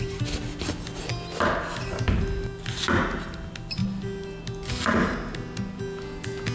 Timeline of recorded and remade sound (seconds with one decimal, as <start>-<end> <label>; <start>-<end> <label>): 0.0-6.5 recorded